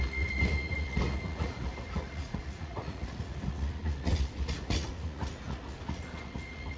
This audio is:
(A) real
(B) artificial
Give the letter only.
B